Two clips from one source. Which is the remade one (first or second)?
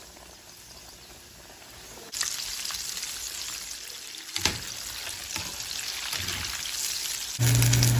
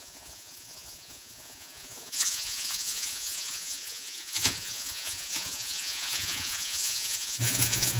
second